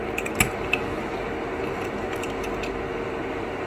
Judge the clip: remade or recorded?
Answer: recorded